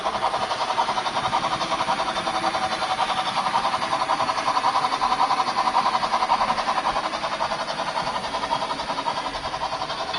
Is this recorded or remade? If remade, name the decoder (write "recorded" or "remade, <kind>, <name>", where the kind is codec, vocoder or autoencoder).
recorded